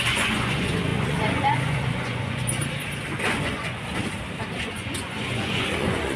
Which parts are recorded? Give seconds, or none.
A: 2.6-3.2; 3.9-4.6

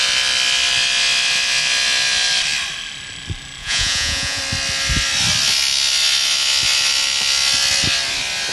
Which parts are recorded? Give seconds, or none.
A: 0.0-3.6; 4.4-8.5

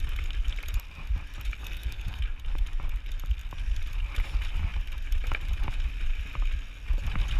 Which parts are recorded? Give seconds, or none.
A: 0.0-1.6; 2.2-7.4

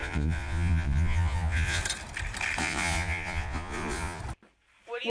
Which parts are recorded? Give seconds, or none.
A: 1.8-2.6; 4.2-5.1

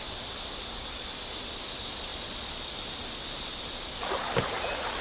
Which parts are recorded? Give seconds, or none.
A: 0.0-5.0

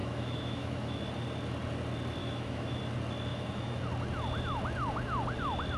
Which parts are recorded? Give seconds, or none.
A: 1.0-2.2; 2.8-3.3; 3.8-5.8

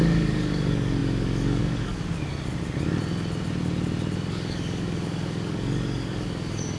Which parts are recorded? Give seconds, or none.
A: 2.0-4.3

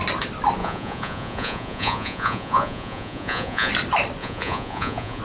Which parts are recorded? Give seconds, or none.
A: 0.0-0.6; 3.7-4.2